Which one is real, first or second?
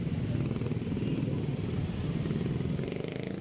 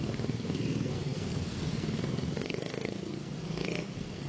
first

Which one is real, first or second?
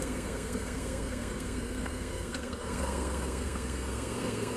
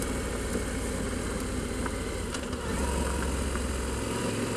second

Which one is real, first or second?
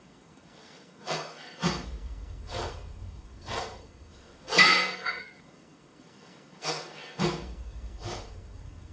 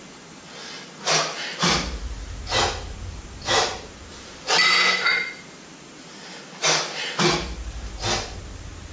second